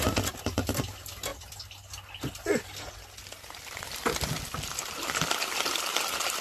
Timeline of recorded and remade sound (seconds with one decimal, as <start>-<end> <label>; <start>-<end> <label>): 0.0-6.4 recorded